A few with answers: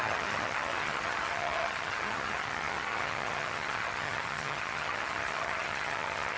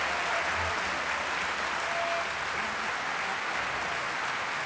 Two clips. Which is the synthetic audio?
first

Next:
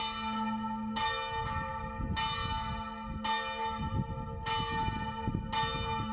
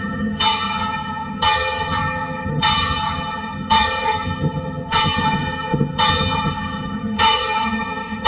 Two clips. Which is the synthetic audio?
second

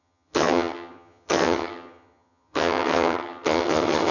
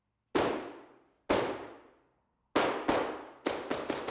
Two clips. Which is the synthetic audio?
first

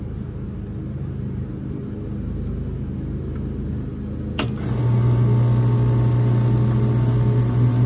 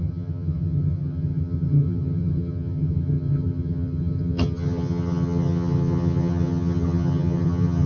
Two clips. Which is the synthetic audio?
second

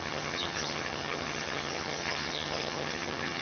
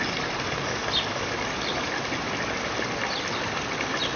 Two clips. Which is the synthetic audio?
first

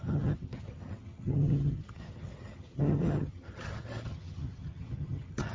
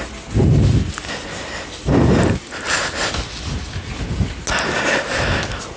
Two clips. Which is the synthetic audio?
first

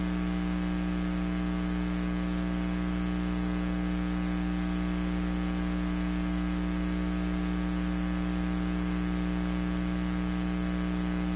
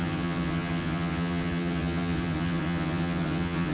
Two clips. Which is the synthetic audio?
second